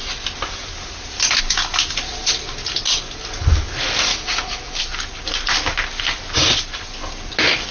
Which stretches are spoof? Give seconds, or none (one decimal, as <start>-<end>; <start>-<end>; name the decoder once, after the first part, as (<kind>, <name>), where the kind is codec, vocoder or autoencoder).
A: 4.1-4.8 (autoencoder, DAC-VAE)

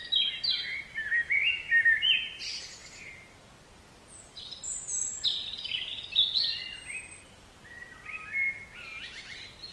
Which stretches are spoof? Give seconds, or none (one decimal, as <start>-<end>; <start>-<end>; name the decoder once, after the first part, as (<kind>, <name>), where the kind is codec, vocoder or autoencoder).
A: none

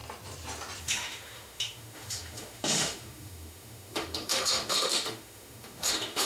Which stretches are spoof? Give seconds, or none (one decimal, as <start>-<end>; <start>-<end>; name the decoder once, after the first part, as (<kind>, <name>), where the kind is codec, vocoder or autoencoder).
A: 0.8-6.3 (autoencoder, DAC-VAE)